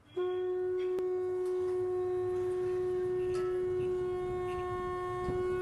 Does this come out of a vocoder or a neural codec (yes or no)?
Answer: no